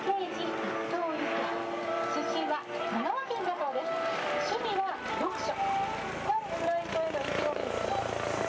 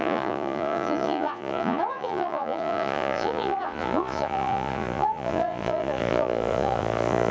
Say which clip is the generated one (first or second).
second